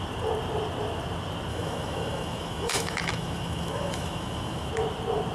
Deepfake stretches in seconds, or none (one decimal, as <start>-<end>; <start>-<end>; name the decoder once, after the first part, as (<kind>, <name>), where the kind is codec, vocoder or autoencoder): 1.5-4.7 (autoencoder, DAC-VAE)